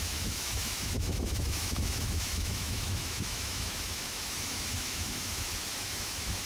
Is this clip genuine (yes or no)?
no